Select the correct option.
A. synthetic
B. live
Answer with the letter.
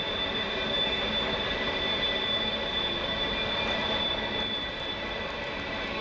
B